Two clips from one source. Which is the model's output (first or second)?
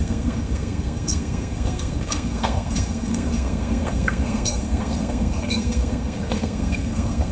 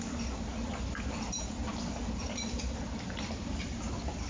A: first